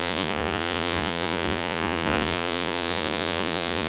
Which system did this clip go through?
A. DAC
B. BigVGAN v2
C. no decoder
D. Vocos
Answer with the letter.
D